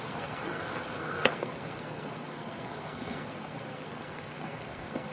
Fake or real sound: fake